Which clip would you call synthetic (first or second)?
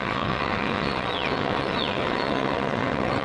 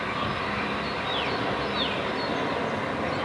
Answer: first